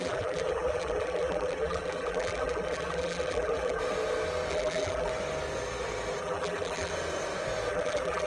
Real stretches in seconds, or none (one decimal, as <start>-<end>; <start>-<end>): 3.8-4.5; 5.1-6.2; 6.9-7.7